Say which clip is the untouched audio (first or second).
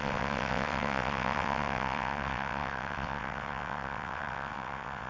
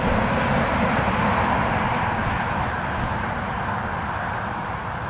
second